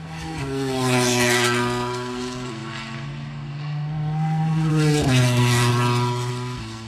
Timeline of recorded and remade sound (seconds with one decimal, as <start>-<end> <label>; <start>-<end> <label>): 0.0-5.7 remade; 5.7-6.3 recorded; 6.3-6.9 remade